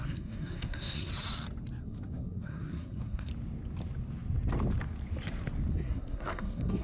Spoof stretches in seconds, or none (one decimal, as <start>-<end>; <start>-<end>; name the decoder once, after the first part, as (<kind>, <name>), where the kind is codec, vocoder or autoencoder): 0.0-1.1 (codec, SNAC); 1.8-3.3; 5.7-6.8